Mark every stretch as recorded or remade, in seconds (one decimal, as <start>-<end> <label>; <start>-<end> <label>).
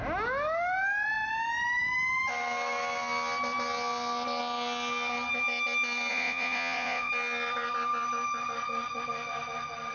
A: 0.0-6.1 recorded; 6.1-7.1 remade; 7.1-9.9 recorded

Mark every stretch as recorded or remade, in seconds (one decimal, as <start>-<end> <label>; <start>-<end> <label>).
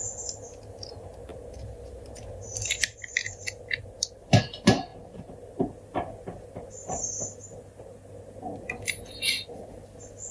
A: 0.0-10.3 recorded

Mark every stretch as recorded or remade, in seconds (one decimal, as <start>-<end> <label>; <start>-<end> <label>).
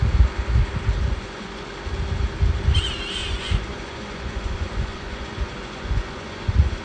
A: 0.0-1.1 recorded; 1.1-1.7 remade; 1.7-3.2 recorded; 3.2-6.8 remade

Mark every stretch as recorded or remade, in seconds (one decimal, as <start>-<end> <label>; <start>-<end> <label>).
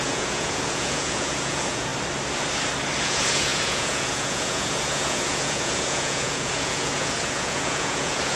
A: 0.0-1.9 remade; 1.9-3.0 recorded; 3.0-8.4 remade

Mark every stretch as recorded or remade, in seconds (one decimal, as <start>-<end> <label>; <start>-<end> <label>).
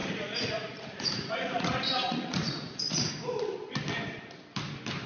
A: 0.0-3.1 remade; 3.1-5.1 recorded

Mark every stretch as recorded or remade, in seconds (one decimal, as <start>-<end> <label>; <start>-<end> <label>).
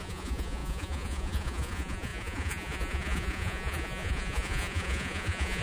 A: 0.0-5.6 remade